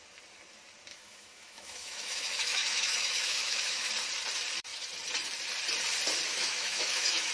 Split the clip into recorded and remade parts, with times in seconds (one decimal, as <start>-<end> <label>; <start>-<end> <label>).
0.0-0.9 recorded; 0.9-3.9 remade; 3.9-6.3 recorded; 6.3-7.3 remade